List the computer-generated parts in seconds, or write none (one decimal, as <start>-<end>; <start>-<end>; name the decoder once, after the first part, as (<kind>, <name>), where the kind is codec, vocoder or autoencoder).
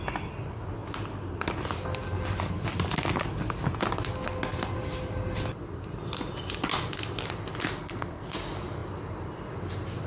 7.8-8.3 (codec, SNAC)